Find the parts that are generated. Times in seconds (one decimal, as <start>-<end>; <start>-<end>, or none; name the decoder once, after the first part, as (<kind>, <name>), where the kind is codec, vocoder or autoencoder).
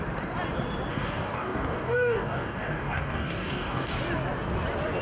0.9-3.9 (codec, DAC)